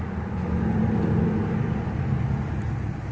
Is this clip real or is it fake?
real